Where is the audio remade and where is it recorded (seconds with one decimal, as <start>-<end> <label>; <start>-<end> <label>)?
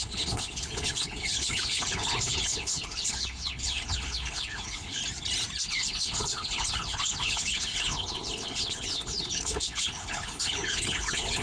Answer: 0.0-5.0 remade; 5.0-5.7 recorded; 5.7-11.4 remade